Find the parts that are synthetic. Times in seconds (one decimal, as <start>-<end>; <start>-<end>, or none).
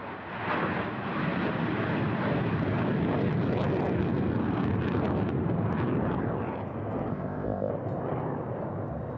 7.1-7.7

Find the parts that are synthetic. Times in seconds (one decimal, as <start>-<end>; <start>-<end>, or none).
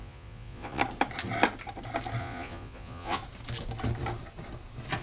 0.0-0.8; 2.2-3.2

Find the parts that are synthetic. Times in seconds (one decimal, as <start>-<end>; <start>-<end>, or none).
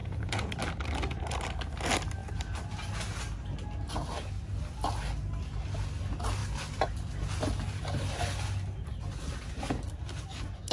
0.0-0.5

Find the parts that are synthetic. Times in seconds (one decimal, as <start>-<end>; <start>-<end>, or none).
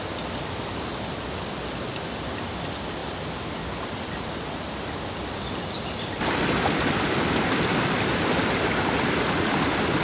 none